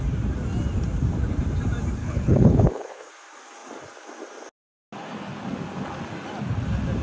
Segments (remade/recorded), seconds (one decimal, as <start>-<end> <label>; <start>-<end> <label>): 0.0-2.0 recorded; 2.0-3.1 remade; 3.1-7.0 recorded